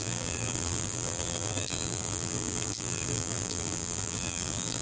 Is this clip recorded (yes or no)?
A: no